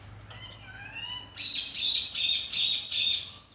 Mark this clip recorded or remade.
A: recorded